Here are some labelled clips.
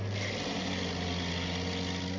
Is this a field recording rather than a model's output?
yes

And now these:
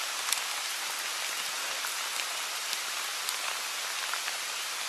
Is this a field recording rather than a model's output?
yes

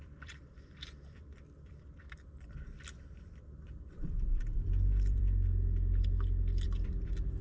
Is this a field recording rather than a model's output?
no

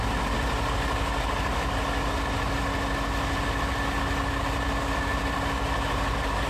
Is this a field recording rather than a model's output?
yes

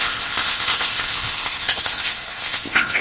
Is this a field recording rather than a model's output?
no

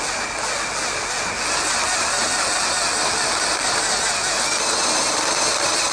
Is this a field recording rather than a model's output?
yes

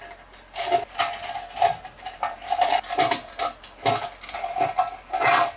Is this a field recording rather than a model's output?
yes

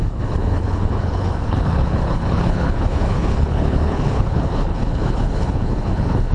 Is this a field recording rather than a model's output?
no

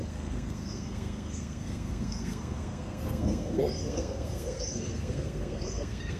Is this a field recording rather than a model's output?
no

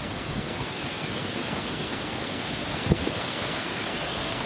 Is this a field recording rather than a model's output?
no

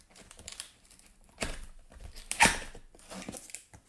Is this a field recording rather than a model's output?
yes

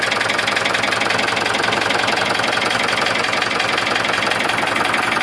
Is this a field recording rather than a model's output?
yes